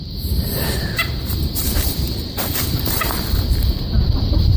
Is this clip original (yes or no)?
no